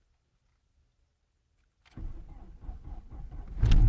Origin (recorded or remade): recorded